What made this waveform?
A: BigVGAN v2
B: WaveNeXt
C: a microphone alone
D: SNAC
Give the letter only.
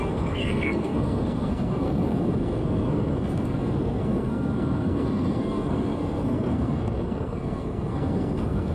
D